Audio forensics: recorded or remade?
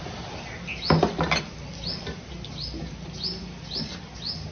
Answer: recorded